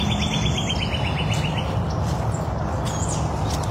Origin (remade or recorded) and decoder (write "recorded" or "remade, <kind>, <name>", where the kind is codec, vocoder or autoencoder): recorded